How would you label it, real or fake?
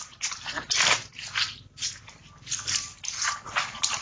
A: fake